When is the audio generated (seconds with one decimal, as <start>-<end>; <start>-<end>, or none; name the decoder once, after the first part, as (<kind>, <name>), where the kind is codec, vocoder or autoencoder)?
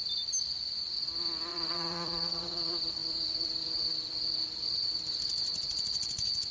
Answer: 1.5-2.6 (vocoder, Vocos); 5.5-6.5